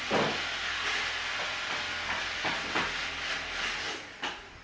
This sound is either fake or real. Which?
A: real